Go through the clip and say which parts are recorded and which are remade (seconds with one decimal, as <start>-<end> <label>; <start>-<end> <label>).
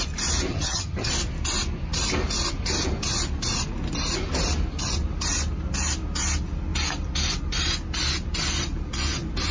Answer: 0.0-0.5 recorded; 0.5-1.1 remade; 1.1-9.5 recorded